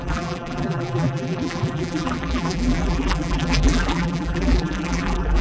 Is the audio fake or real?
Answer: fake